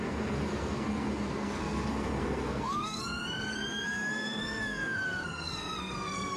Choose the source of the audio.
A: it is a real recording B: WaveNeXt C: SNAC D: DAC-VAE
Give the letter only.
C